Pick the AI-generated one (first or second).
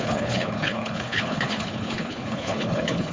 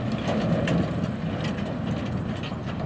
first